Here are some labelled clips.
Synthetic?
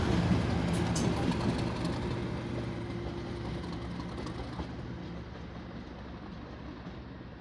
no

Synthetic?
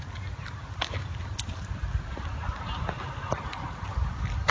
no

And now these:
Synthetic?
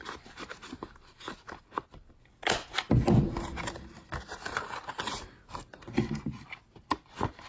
no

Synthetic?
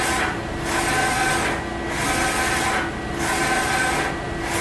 no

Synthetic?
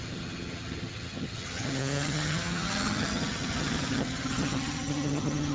yes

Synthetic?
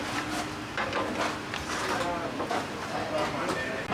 no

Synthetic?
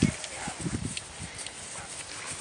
no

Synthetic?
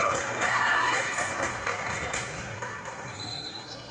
yes